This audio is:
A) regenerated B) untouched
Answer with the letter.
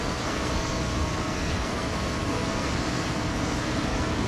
A